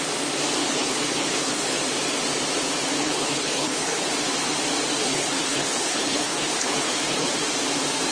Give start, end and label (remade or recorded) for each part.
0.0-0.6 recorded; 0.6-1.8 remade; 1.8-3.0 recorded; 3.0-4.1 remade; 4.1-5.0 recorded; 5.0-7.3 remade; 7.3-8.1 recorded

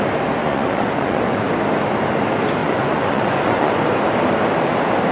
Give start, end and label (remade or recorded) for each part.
0.0-0.4 recorded; 0.4-1.5 remade; 1.5-2.6 recorded; 2.6-3.8 remade; 3.8-5.1 recorded

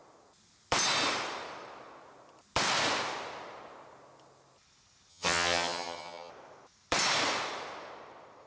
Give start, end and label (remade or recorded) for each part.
0.0-5.1 recorded; 5.1-6.3 remade; 6.3-8.5 recorded

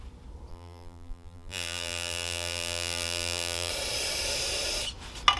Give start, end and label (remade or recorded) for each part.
0.0-0.5 recorded; 0.5-3.7 remade; 3.7-5.4 recorded

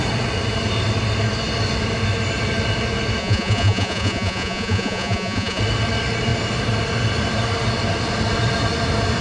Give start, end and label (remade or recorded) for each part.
0.0-3.2 recorded; 3.2-5.6 remade; 5.6-9.2 recorded

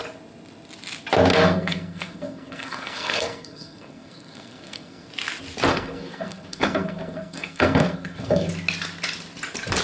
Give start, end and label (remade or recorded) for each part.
0.0-1.3 recorded; 1.3-5.1 remade; 5.1-5.7 recorded; 5.7-8.5 remade; 8.5-9.8 recorded

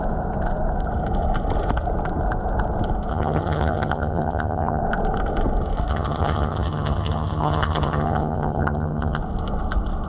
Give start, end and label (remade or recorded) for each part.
0.0-3.1 recorded; 3.1-4.8 remade; 4.8-5.9 recorded; 5.9-9.2 remade; 9.2-10.1 recorded